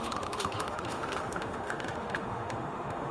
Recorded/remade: remade